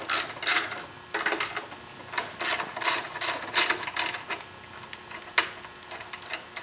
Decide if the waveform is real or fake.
real